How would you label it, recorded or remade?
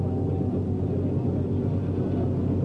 recorded